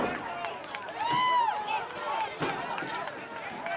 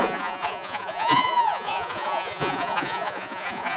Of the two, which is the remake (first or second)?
second